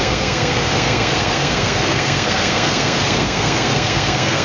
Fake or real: fake